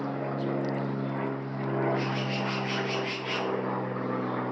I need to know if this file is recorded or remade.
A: recorded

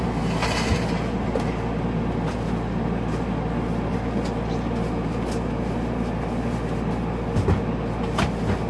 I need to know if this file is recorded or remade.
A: recorded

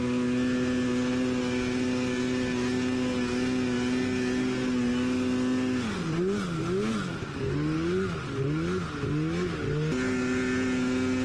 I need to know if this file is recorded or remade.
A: recorded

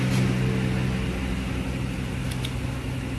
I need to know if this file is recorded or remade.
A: recorded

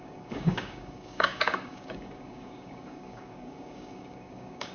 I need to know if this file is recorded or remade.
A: remade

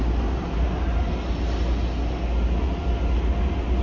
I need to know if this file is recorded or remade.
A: recorded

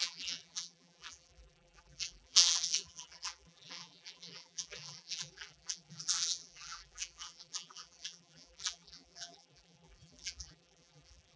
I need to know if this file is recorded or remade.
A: remade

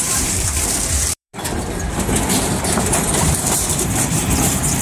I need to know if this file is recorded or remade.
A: remade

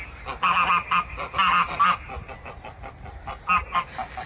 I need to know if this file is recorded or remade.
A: recorded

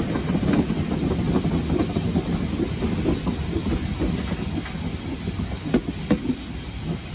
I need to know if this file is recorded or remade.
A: recorded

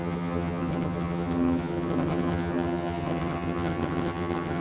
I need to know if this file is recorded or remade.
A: remade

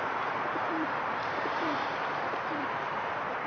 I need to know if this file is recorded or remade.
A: recorded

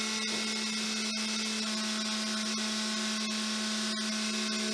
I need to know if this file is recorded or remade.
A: recorded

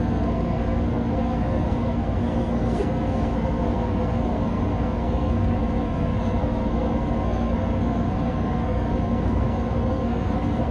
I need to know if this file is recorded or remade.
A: remade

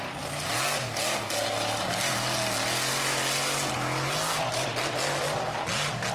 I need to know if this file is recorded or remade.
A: recorded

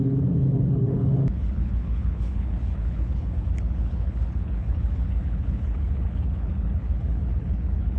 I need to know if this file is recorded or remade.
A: remade